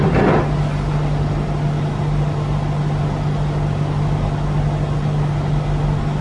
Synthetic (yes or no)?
no